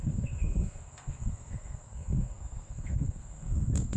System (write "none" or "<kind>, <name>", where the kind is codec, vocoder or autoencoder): codec, SNAC